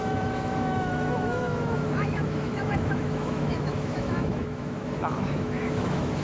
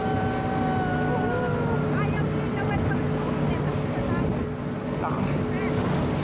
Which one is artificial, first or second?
first